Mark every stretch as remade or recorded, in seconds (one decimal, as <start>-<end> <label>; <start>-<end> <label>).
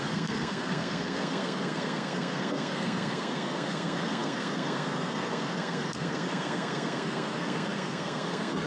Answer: 0.0-8.7 remade